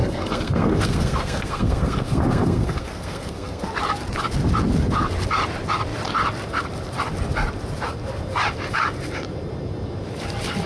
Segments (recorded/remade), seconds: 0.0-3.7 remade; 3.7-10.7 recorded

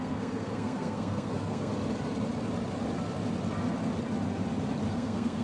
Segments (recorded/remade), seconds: 0.0-1.7 remade; 1.7-4.9 recorded; 4.9-5.4 remade

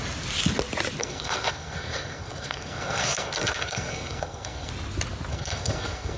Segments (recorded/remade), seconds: 0.0-1.0 recorded; 1.0-4.7 remade; 4.7-5.3 recorded; 5.3-6.2 remade

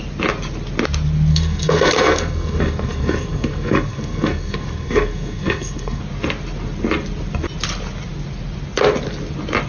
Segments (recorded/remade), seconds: 0.0-1.3 recorded; 1.3-6.0 remade; 6.0-9.7 recorded